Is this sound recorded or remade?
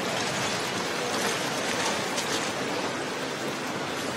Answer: recorded